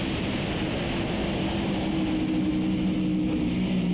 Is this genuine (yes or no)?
yes